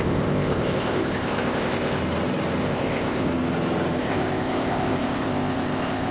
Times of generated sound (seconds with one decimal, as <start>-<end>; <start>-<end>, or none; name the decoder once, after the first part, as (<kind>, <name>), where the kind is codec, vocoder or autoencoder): 0.0-2.0 (codec, ZipCodec); 2.6-3.3; 4.0-6.1

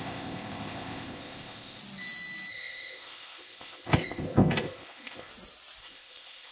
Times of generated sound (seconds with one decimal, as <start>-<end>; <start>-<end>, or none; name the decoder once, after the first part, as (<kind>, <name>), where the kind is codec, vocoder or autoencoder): 0.0-1.8 (codec, ZipCodec); 2.5-5.3; 5.8-6.5

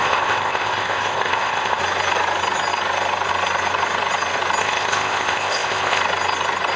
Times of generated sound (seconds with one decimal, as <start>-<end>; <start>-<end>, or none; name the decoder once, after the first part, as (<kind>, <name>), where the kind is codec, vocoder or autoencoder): 0.0-1.8 (codec, ZipCodec); 4.6-6.0